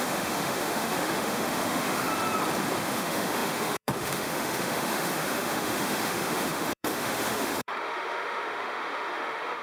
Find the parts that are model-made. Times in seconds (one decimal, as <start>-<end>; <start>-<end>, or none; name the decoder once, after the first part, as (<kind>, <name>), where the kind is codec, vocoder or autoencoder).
0.0-2.1 (autoencoder, DAC-VAE); 2.8-9.6

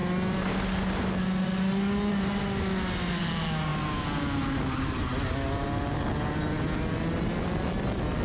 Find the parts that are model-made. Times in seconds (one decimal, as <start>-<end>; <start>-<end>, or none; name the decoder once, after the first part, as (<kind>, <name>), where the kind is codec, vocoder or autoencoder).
none